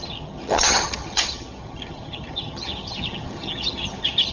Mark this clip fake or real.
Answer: fake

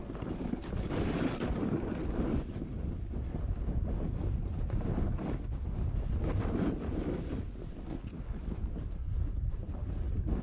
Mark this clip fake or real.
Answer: real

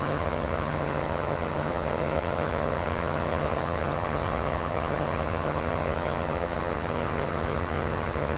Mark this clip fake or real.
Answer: fake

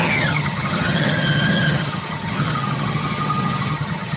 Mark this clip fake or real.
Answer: fake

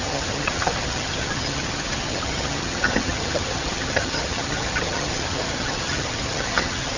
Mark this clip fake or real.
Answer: fake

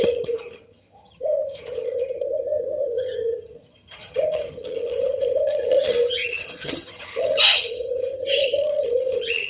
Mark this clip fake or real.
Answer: fake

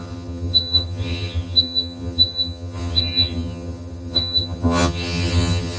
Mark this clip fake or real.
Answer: fake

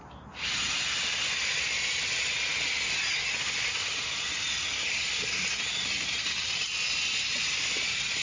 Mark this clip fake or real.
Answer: real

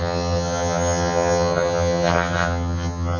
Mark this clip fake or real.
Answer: fake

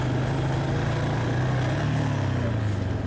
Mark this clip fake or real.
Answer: real